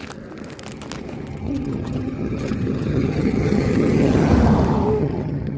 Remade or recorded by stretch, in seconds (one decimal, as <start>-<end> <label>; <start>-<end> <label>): 0.0-1.3 recorded; 1.3-4.3 remade; 4.3-5.0 recorded; 5.0-5.6 remade